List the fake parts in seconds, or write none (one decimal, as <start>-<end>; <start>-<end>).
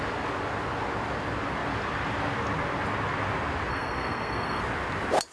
3.7-4.6